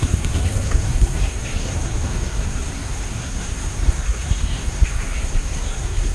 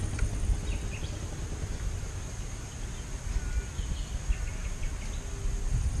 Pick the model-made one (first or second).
first